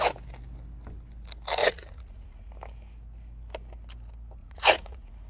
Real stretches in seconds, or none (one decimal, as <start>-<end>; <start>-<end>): 0.0-1.6; 2.5-4.4